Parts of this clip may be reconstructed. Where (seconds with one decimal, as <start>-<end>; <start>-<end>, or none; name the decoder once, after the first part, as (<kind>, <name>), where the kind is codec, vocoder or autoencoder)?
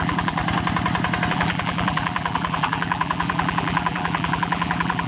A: 0.0-0.4 (vocoder, BigVGAN v2); 1.3-5.1